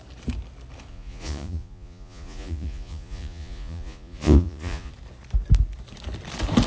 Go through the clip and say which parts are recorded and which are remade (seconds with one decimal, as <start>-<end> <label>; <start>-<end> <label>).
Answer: 0.0-0.9 recorded; 0.9-4.9 remade; 4.9-6.7 recorded